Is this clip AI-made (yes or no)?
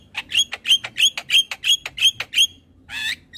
no